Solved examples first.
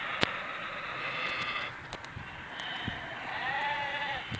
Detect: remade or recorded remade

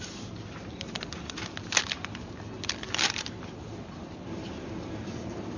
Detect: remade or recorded recorded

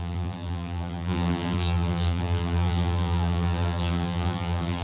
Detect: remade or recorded remade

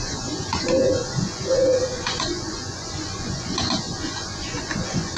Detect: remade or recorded remade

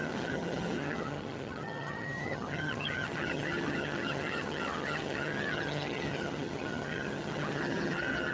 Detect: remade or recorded remade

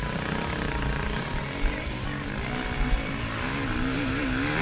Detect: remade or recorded recorded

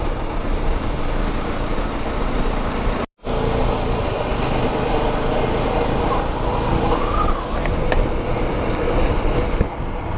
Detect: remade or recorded recorded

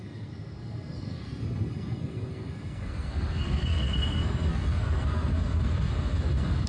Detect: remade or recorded remade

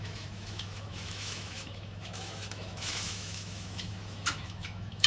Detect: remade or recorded remade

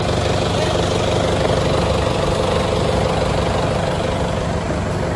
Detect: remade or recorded recorded